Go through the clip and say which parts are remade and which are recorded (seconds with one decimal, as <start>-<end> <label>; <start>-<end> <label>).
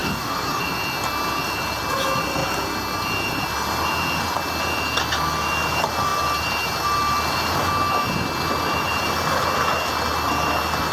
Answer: 0.0-0.6 remade; 0.6-10.9 recorded